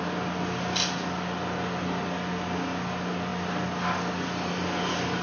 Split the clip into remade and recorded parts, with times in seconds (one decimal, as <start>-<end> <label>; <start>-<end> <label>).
0.0-5.2 recorded